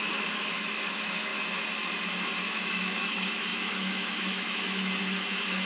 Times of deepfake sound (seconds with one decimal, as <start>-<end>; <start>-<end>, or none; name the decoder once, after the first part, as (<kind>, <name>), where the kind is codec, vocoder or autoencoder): 0.0-1.3 (autoencoder, DAC-VAE); 2.4-5.7